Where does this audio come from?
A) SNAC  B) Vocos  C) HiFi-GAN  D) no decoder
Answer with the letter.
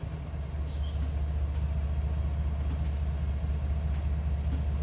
D